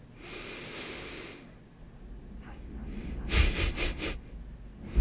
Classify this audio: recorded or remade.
recorded